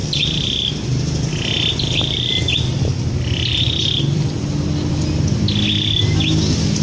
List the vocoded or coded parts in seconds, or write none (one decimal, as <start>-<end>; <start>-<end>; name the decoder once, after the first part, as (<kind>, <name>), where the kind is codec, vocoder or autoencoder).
2.3-5.5 (vocoder, BigVGAN v2)